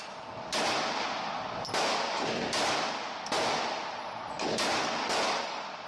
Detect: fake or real real